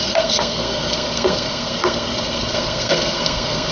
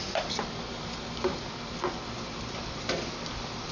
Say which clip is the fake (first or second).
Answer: first